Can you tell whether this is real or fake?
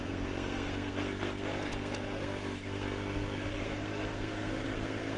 fake